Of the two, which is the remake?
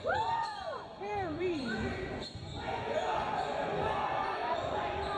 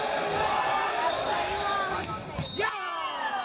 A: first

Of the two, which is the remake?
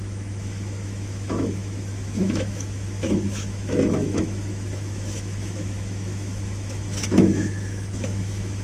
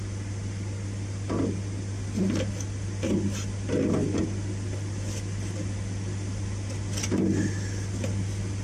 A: first